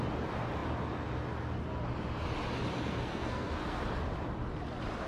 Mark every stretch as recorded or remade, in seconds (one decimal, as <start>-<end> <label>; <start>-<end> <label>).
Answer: 0.0-2.9 recorded; 2.9-3.8 remade; 3.8-5.1 recorded